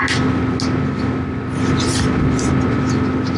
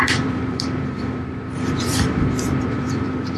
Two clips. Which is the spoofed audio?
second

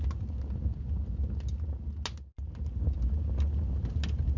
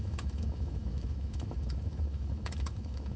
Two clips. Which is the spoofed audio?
second